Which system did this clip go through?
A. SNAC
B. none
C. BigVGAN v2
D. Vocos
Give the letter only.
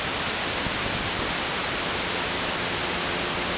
B